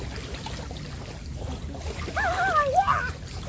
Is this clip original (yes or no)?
yes